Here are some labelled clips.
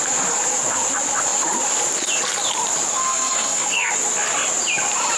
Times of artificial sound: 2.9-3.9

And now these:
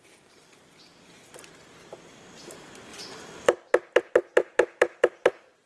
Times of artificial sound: none